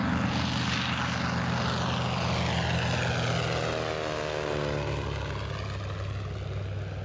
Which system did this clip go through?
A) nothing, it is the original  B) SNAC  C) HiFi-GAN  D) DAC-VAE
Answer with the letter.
A